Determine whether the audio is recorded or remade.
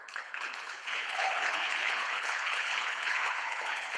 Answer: remade